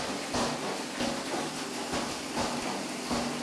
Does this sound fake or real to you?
real